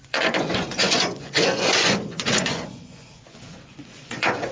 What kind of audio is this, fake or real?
fake